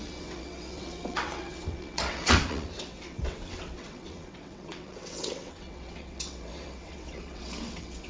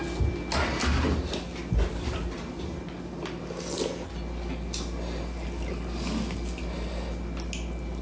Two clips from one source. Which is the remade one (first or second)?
first